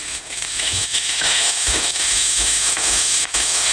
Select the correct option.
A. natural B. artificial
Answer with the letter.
B